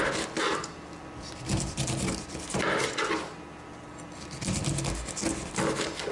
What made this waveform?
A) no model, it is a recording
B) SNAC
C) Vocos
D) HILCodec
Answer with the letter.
A